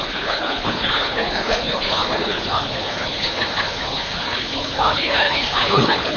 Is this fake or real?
fake